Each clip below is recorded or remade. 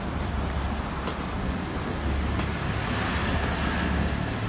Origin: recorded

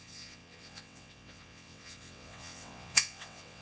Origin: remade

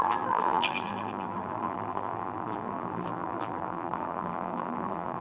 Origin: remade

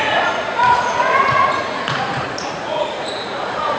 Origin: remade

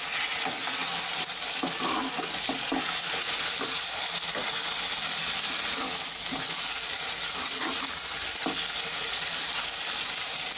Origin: recorded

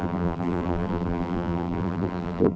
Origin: remade